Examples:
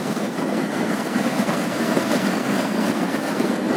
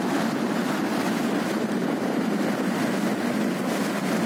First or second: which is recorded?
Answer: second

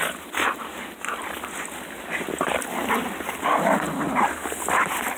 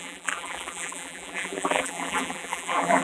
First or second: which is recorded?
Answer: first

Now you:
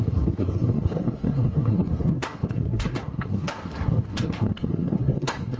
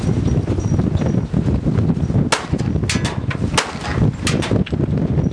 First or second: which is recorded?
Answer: second